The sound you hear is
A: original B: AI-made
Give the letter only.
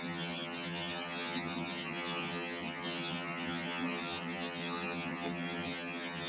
B